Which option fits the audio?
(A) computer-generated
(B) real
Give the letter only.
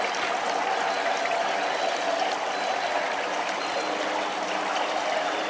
B